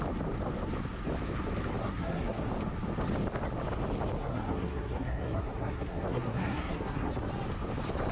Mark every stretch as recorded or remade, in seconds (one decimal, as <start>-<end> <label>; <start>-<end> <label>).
0.0-1.8 recorded; 1.8-2.5 remade; 2.5-4.2 recorded; 4.2-7.1 remade; 7.1-8.1 recorded